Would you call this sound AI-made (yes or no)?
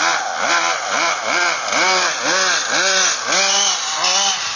no